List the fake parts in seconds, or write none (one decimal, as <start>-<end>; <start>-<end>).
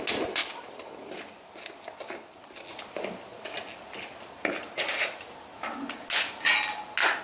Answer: none